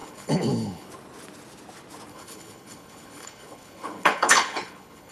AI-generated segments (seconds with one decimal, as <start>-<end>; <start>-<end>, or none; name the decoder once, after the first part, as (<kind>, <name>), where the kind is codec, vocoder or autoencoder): 0.0-0.9 (codec, HILCodec); 2.1-5.1